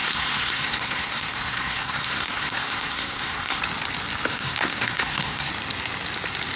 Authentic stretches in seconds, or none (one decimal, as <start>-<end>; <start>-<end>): 3.6-4.3; 5.5-6.6